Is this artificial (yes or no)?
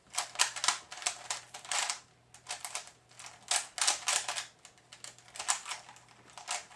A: no